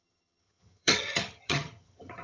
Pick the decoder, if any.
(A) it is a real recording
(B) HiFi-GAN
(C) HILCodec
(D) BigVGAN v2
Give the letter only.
B